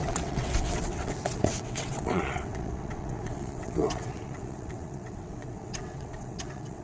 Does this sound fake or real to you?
fake